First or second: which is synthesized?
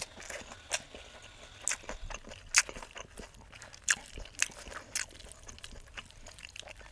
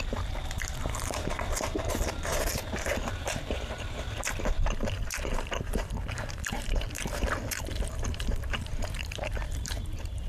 second